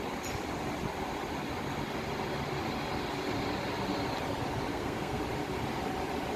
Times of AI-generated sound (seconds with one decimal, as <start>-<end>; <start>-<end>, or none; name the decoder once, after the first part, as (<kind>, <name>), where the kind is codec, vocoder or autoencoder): 4.7-5.2 (codec, SNAC)